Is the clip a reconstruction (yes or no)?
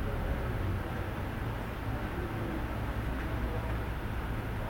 no